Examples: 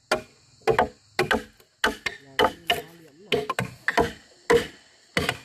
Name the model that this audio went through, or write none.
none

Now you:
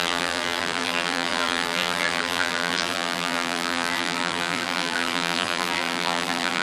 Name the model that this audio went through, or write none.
vocoder, BigVGAN v2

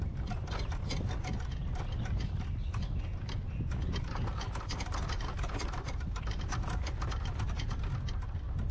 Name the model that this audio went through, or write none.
none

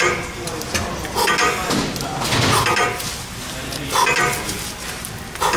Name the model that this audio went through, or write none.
none